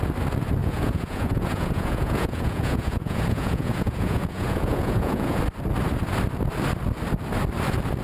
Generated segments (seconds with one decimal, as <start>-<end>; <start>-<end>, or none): 0.6-5.4